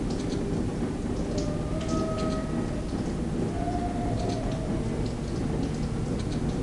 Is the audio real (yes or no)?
yes